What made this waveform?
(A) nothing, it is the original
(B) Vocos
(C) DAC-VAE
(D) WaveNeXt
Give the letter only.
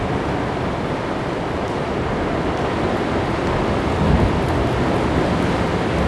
A